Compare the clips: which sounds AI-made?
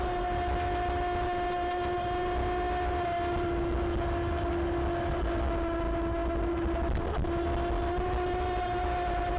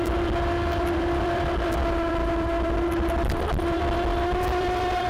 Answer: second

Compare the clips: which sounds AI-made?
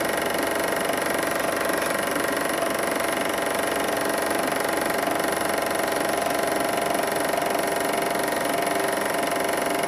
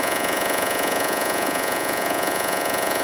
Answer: second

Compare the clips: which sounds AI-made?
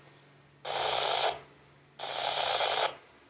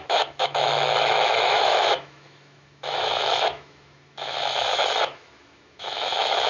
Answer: second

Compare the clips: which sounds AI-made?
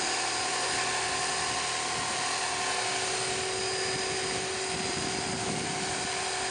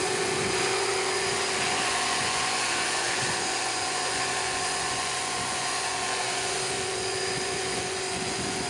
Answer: second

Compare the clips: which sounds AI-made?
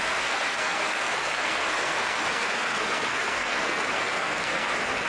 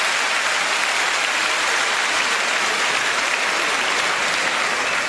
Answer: first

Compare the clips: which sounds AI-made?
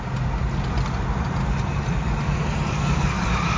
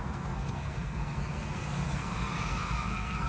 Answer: second